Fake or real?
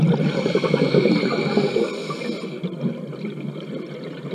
real